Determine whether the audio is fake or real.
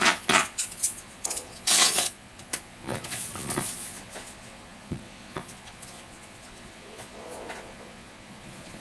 fake